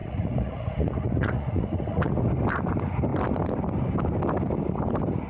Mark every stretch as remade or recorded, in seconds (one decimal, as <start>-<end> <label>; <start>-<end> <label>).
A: 0.0-2.2 remade; 2.2-5.3 recorded